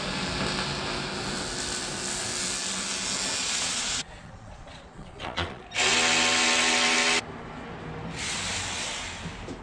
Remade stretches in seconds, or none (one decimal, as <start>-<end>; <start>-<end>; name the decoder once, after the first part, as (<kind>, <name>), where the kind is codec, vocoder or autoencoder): 3.4-5.6 (vocoder, Vocos)